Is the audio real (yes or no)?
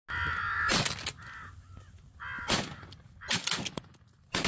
yes